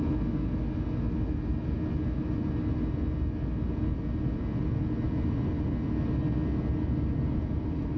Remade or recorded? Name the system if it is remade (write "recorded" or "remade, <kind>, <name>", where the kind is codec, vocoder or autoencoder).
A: recorded